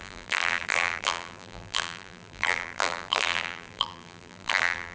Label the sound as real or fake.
fake